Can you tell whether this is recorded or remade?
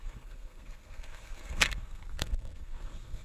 remade